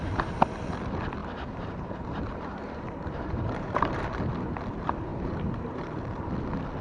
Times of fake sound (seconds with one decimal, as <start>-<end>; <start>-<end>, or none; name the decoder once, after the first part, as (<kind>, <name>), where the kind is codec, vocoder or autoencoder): 1.2-4.0 (vocoder, BigVGAN v2); 5.1-6.3